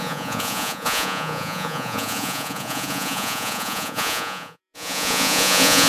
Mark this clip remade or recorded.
remade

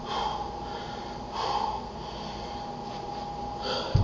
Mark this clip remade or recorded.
recorded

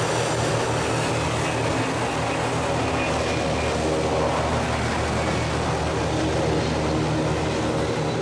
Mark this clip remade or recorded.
recorded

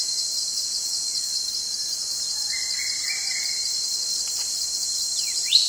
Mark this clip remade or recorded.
recorded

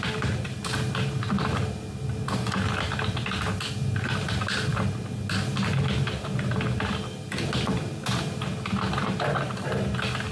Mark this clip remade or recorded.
recorded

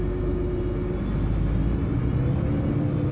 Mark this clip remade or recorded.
recorded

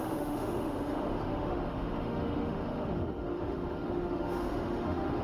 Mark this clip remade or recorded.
remade